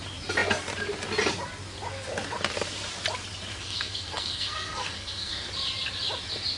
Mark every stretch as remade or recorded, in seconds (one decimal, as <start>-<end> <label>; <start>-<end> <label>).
0.0-3.5 recorded; 3.5-5.5 remade; 5.5-6.6 recorded